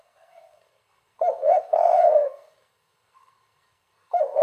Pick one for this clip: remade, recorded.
remade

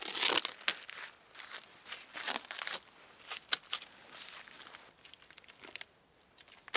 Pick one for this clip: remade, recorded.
recorded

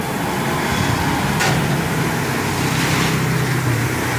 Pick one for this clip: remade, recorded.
recorded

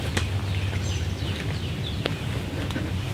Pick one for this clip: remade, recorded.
recorded